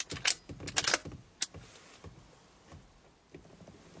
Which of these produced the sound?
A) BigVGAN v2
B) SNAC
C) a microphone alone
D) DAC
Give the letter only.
C